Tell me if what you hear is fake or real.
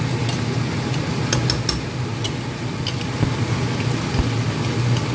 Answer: real